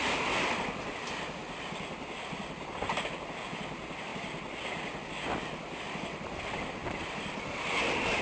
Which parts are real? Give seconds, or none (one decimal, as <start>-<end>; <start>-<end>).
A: 0.0-6.8; 7.4-8.2